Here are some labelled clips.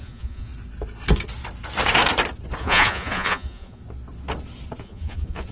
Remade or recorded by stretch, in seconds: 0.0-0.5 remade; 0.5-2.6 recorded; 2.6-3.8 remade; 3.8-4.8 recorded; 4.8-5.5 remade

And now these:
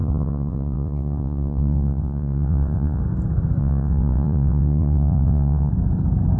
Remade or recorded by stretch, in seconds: 0.0-3.0 remade; 3.0-3.6 recorded; 3.6-5.7 remade; 5.7-6.4 recorded

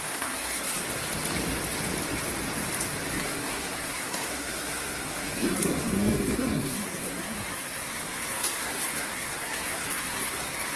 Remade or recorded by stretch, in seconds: 0.0-0.8 remade; 0.8-3.2 recorded; 3.2-10.8 remade

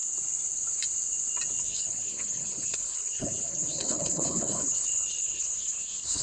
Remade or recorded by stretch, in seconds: 0.0-1.6 recorded; 1.6-6.2 remade

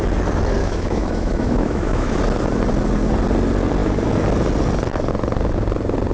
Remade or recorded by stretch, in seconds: 0.0-0.6 recorded; 0.6-2.2 remade; 2.2-6.1 recorded

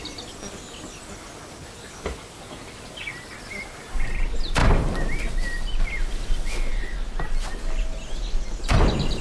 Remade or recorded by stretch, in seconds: 0.0-9.2 recorded

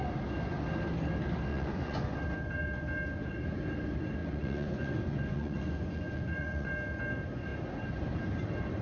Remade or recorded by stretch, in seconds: 0.0-1.5 recorded; 1.5-2.2 remade; 2.2-4.2 recorded; 4.2-6.7 remade; 6.7-8.8 recorded